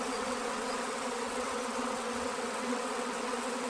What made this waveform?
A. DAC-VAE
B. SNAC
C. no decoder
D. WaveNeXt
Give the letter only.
D